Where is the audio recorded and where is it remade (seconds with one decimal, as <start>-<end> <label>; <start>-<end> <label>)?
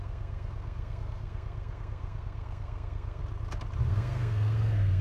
0.0-3.2 remade; 3.2-3.8 recorded; 3.8-5.0 remade